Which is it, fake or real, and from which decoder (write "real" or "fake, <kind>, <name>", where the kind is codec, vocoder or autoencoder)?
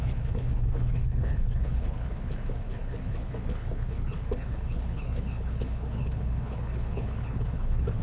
fake, codec, HILCodec